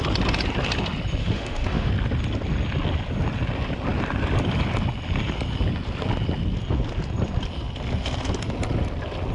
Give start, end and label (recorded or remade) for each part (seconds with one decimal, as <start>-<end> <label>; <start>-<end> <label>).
0.0-1.2 recorded; 1.2-1.9 remade; 1.9-9.3 recorded